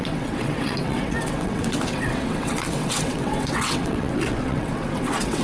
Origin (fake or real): fake